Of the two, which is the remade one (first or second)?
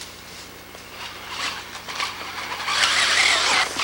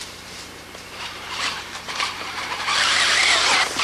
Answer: second